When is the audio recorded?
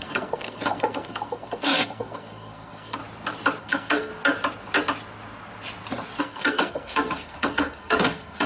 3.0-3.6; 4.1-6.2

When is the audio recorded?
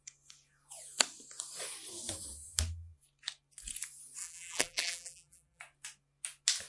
0.0-4.2; 5.6-6.7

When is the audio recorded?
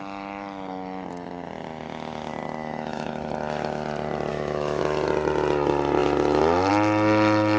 0.0-2.6; 3.3-4.3; 4.8-7.6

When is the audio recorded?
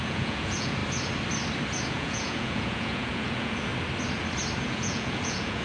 0.8-1.9; 3.7-4.6